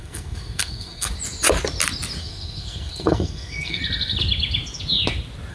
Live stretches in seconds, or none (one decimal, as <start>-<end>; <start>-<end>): 1.1-2.2; 3.8-5.5